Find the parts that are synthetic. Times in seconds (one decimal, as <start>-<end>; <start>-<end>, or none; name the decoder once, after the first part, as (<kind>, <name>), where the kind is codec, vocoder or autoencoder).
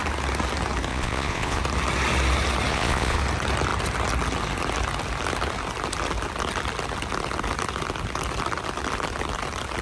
0.9-1.6 (vocoder, Vocos); 2.7-3.2